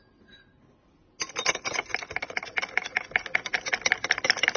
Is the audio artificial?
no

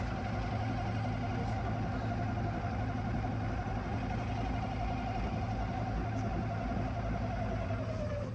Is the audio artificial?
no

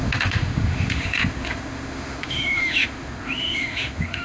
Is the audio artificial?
yes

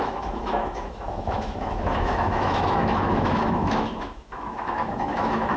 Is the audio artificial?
yes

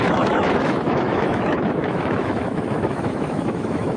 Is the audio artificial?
yes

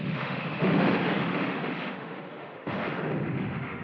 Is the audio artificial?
yes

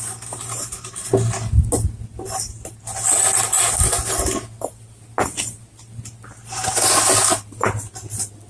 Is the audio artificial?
no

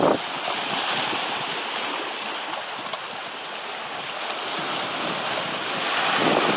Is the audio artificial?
no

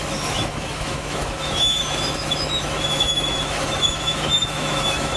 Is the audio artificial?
yes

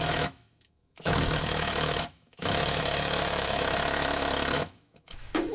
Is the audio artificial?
yes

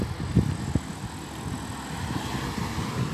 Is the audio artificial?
no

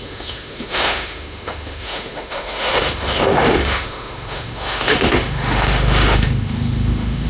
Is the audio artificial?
yes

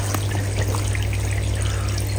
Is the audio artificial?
no